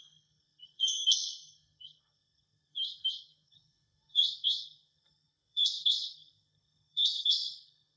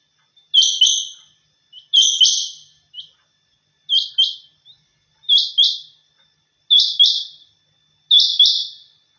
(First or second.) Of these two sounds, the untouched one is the second